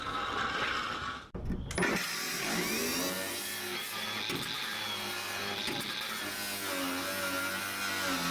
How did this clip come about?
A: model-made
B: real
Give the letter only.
B